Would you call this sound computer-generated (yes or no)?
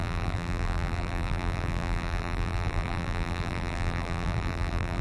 yes